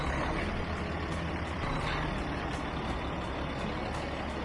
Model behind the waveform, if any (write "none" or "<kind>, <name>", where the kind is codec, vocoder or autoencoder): none